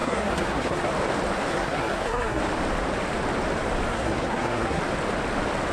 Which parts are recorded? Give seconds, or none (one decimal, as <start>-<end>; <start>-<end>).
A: 0.9-1.5; 2.4-3.9; 4.8-5.7